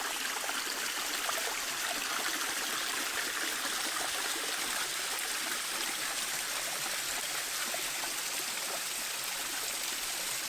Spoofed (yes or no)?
no